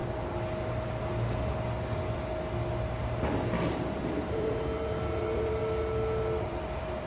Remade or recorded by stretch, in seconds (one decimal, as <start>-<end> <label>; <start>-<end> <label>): 0.0-4.3 recorded; 4.3-5.6 remade; 5.6-6.4 recorded; 6.4-7.1 remade